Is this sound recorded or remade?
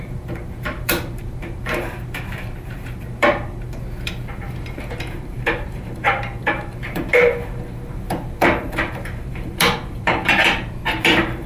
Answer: remade